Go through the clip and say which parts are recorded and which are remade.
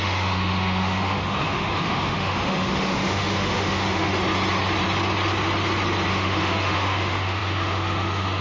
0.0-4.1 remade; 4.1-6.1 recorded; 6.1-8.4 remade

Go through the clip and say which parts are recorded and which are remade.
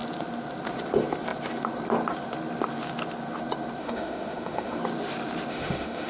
0.0-3.8 recorded; 3.8-4.8 remade; 4.8-5.5 recorded; 5.5-6.1 remade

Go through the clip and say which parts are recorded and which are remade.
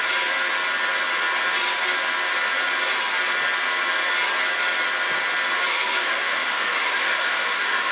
0.0-5.7 recorded; 5.7-7.9 remade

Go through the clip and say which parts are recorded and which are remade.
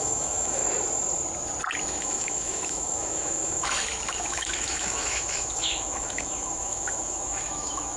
0.0-0.6 remade; 0.6-1.8 recorded; 1.8-8.0 remade